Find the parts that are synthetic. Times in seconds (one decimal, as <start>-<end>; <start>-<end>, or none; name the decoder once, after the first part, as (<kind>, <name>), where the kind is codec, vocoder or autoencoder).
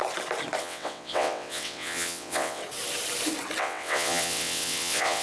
0.6-2.6 (vocoder, WaveNeXt); 3.6-5.2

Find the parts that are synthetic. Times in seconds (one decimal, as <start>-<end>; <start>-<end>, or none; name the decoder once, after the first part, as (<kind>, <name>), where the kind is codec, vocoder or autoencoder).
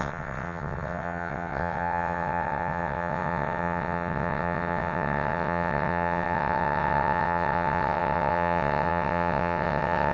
0.0-10.1 (vocoder, WaveNeXt)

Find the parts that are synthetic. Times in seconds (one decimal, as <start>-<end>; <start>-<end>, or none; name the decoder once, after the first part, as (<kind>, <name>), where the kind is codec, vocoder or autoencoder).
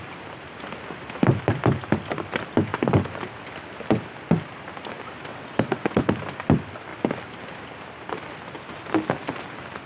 5.3-6.1 (vocoder, WaveNeXt)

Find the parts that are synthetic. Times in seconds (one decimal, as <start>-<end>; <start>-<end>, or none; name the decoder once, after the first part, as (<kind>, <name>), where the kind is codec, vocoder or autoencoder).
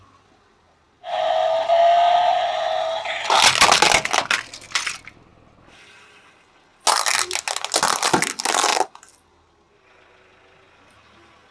none